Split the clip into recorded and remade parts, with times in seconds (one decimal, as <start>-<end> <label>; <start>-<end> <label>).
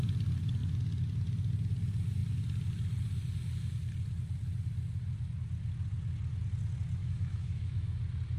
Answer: 0.0-7.0 recorded; 7.0-8.0 remade; 8.0-8.4 recorded